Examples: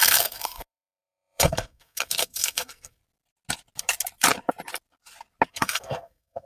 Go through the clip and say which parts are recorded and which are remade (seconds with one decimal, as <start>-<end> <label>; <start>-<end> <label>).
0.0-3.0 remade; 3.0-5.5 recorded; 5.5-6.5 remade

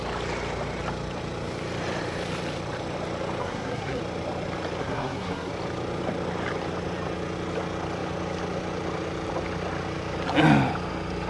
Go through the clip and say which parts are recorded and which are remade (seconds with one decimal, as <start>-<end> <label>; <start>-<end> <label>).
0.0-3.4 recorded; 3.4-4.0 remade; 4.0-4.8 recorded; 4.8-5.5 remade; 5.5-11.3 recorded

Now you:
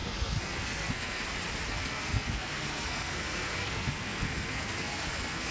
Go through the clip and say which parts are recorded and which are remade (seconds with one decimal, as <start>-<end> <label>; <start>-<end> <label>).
0.0-1.2 remade; 1.2-1.7 recorded; 1.7-5.5 remade

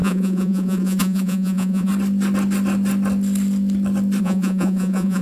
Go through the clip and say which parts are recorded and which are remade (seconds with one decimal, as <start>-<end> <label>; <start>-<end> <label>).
0.0-1.9 remade; 1.9-4.2 recorded; 4.2-5.2 remade

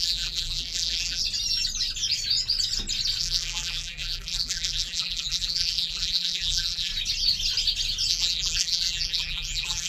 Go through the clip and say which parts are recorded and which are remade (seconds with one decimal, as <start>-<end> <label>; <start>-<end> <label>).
0.0-1.2 remade; 1.2-3.2 recorded; 3.2-6.9 remade; 6.9-8.1 recorded; 8.1-9.9 remade